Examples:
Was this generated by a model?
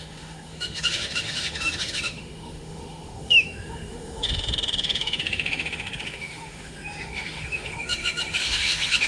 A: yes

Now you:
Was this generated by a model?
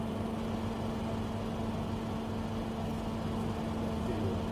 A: no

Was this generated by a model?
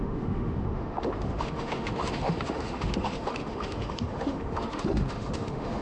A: yes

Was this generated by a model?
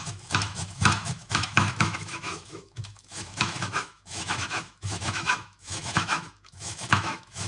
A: yes